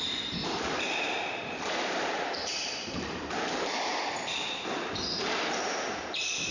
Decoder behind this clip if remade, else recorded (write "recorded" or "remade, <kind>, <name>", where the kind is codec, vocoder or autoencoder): remade, vocoder, BigVGAN v2